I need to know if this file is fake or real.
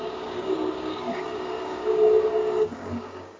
fake